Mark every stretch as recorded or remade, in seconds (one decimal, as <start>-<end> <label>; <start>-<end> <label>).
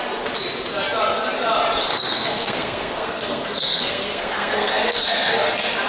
0.0-1.8 recorded; 1.8-5.3 remade; 5.3-5.9 recorded